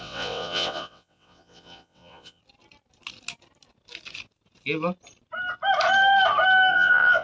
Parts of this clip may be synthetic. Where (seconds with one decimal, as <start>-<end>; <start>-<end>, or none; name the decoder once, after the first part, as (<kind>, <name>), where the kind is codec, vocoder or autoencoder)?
0.0-2.4 (vocoder, WaveNeXt); 6.7-7.2